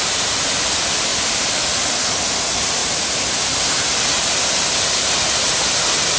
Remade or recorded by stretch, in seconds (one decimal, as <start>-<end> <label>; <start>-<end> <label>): 0.0-1.1 recorded; 1.1-1.6 remade; 1.6-4.1 recorded; 4.1-4.8 remade; 4.8-6.2 recorded